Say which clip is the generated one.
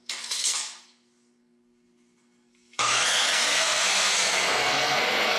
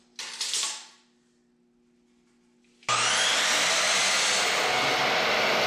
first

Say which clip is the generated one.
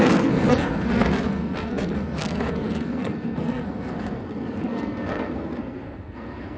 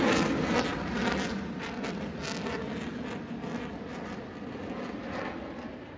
first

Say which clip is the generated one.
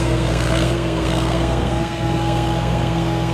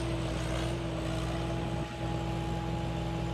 first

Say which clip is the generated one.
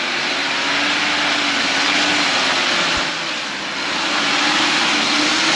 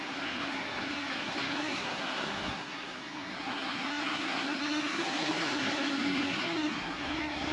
second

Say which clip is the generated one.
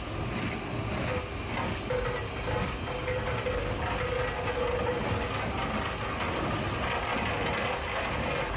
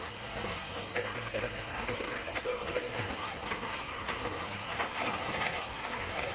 second